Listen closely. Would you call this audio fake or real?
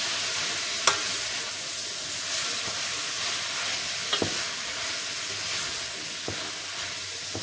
real